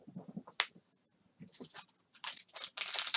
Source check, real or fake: real